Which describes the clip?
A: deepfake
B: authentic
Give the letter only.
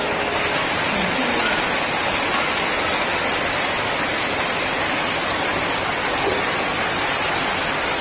B